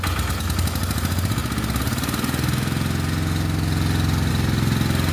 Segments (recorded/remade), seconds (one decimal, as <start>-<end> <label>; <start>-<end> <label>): 0.0-5.1 recorded